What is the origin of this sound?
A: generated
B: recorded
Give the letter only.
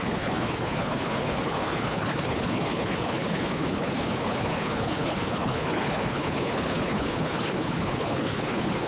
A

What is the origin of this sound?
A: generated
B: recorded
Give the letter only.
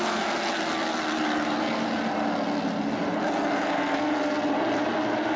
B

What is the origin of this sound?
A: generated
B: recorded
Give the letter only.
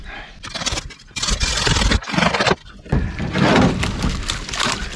B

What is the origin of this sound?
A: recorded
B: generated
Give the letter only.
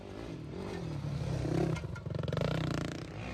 A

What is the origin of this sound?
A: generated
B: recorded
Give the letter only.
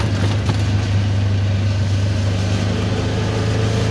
B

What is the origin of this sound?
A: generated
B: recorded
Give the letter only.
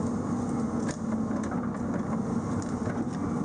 B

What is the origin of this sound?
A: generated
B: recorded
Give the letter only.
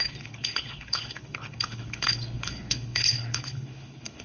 A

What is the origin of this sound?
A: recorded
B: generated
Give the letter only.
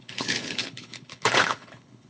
B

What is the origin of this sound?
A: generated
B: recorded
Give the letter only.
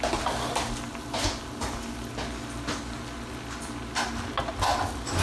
B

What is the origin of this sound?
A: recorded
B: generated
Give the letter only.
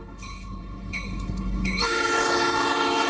B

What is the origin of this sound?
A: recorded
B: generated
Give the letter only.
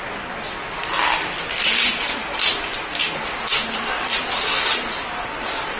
A